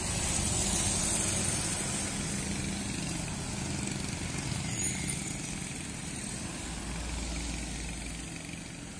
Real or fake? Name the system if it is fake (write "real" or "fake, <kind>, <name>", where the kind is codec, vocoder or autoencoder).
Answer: real